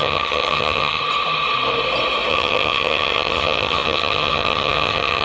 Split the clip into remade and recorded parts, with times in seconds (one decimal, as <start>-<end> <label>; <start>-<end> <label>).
0.0-1.0 remade; 1.0-2.3 recorded; 2.3-5.2 remade